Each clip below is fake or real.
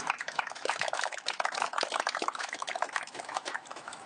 fake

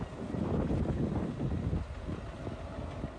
real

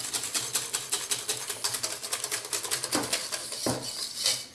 real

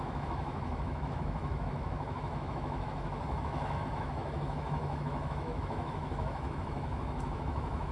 fake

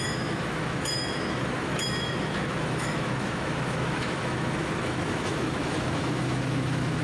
fake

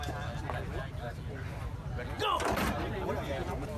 real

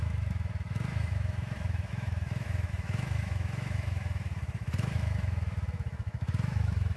fake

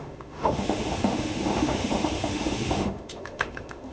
fake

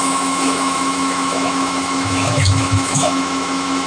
fake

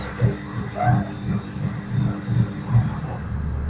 real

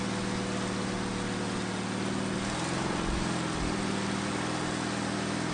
real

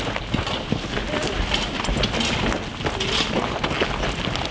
real